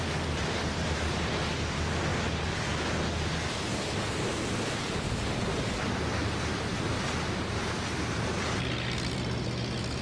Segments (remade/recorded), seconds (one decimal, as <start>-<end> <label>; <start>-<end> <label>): 0.0-10.0 recorded